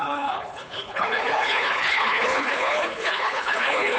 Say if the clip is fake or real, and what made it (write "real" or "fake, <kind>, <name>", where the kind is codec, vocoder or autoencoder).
fake, codec, HILCodec